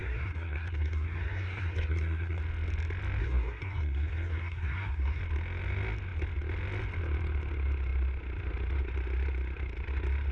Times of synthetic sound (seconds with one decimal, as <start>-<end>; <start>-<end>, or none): 0.0-2.4; 3.2-5.2